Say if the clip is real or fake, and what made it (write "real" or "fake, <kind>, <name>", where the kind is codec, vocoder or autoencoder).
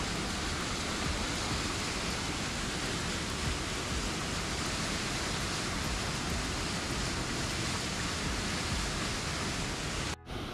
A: real